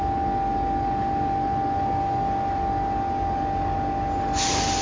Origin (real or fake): real